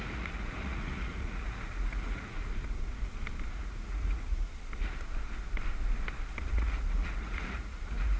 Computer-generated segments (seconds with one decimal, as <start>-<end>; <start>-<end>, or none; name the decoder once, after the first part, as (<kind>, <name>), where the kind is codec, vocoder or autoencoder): 0.0-2.5 (vocoder, Vocos); 3.5-4.5; 6.4-8.2